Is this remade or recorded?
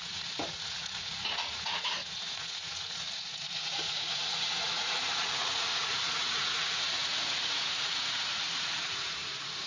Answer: remade